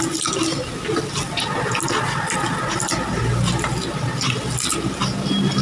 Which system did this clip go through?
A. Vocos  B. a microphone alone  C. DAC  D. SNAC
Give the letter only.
B